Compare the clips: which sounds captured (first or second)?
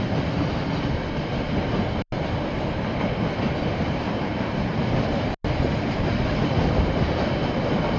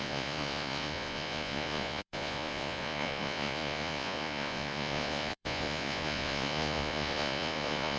first